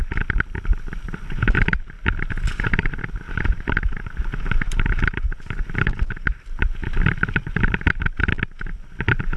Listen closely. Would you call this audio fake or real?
real